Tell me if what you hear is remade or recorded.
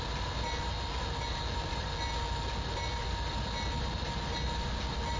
recorded